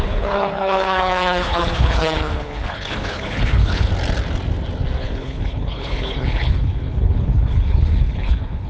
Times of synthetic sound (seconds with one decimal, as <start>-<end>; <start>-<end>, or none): 0.0-3.9; 5.0-8.7